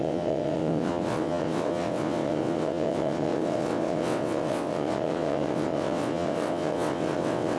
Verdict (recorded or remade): remade